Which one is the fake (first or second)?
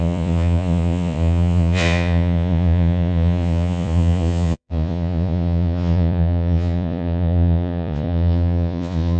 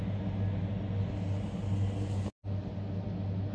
first